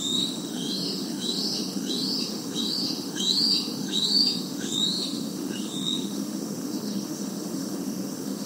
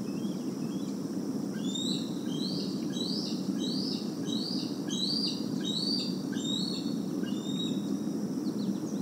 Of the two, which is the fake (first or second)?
first